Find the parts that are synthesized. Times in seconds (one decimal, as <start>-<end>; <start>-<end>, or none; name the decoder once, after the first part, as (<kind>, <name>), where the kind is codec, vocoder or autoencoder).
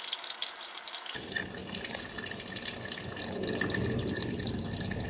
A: 0.0-1.6 (vocoder, BigVGAN v2)